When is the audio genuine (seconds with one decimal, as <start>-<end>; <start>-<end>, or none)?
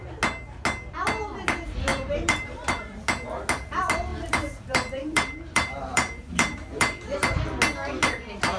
0.0-1.9; 2.6-4.1; 7.4-8.6